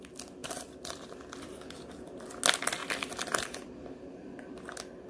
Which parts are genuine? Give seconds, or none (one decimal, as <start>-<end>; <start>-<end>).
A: 0.0-0.4; 1.2-2.8; 4.5-5.1